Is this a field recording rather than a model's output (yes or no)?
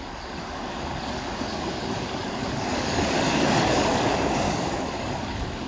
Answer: no